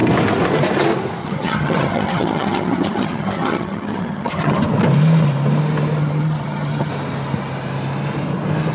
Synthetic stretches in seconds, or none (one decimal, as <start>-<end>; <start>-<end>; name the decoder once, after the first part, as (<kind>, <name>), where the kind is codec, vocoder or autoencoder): 1.2-4.6 (vocoder, HiFi-GAN); 6.0-6.9